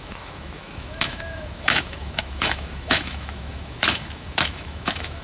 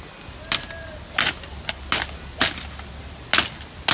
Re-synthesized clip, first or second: first